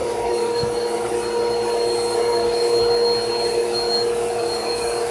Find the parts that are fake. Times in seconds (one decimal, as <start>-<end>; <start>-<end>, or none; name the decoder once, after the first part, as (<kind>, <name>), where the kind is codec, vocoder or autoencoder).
0.0-1.1 (codec, DAC); 2.1-2.8; 3.6-5.1